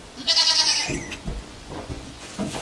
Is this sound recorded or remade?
remade